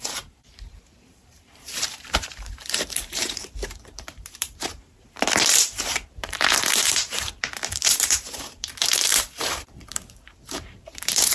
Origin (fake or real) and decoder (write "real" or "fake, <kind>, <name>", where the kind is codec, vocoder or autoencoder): fake, vocoder, BigVGAN v2